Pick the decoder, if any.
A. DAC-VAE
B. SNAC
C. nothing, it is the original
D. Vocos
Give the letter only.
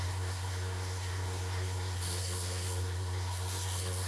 B